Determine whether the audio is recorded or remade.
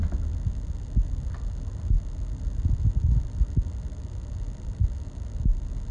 recorded